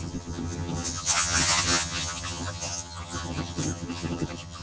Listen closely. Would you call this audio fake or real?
fake